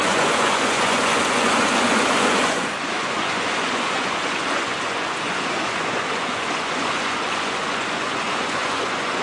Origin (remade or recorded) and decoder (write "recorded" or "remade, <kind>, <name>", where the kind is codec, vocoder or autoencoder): remade, vocoder, Vocos